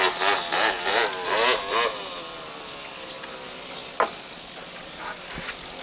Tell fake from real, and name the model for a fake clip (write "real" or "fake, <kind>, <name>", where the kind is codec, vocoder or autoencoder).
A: real